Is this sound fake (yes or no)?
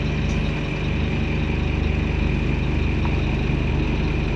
no